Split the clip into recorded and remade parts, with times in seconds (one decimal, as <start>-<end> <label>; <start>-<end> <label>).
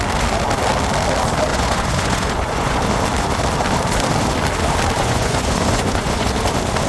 0.0-1.5 recorded; 1.5-2.8 remade; 2.8-5.0 recorded; 5.0-6.3 remade; 6.3-6.9 recorded